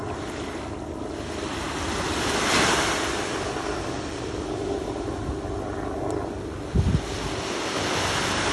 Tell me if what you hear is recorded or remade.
recorded